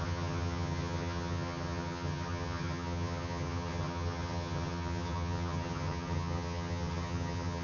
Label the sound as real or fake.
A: fake